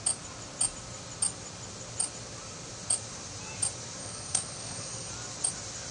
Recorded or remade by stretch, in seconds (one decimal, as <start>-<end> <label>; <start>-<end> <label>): 0.0-4.0 recorded; 4.0-5.1 remade; 5.1-5.9 recorded